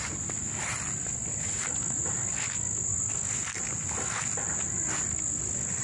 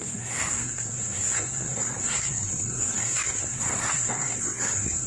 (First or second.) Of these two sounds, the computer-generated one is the second